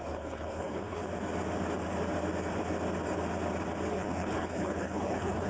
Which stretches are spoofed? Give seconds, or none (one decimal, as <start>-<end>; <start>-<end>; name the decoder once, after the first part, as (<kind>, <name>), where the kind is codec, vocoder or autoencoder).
0.0-1.0 (codec, HILCodec); 3.9-5.5

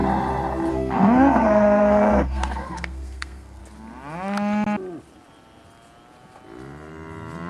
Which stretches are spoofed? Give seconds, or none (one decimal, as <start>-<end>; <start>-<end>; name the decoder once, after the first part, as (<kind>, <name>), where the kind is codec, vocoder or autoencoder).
0.7-3.6 (codec, SNAC)

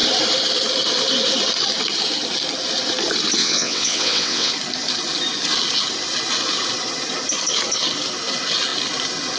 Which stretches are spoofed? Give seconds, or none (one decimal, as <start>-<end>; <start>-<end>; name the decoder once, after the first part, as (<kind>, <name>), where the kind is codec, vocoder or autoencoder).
3.4-4.5 (vocoder, WaveNeXt)

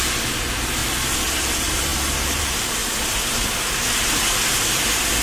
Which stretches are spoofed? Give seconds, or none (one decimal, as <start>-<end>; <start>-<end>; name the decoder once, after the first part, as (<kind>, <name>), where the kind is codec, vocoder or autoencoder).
0.0-0.8 (vocoder, BigVGAN v2); 1.4-1.9; 2.4-2.8

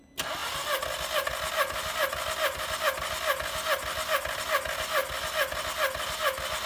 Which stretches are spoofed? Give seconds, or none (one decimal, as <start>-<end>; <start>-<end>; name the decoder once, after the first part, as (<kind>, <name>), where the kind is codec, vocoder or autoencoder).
none